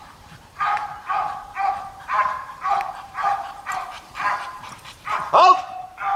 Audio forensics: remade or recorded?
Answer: remade